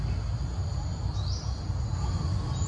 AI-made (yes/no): no